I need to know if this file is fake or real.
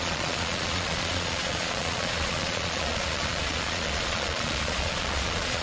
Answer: fake